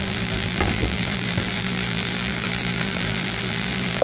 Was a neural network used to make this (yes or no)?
yes